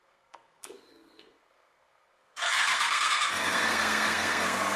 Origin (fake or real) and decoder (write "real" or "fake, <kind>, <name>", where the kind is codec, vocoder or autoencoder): fake, codec, SNAC